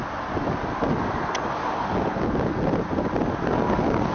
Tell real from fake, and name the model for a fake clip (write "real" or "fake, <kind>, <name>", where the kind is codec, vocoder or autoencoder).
real